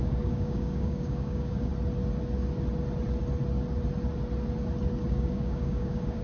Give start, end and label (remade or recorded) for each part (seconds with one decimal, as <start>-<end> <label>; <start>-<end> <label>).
0.0-1.7 remade; 1.7-5.1 recorded; 5.1-6.2 remade